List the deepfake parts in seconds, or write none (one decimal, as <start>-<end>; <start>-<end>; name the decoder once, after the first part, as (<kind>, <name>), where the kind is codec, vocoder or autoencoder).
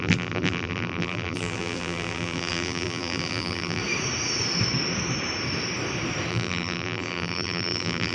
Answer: 0.0-3.8 (vocoder, BigVGAN v2); 6.3-8.1